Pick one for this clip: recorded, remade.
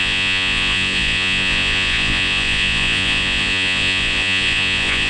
remade